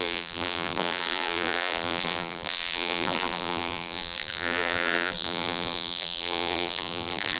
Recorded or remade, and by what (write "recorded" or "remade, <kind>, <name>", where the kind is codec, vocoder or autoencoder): remade, vocoder, BigVGAN v2